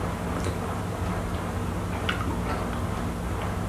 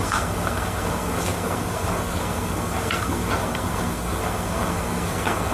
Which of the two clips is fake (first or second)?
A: second